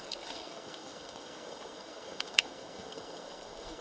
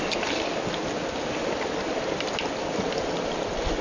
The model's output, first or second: first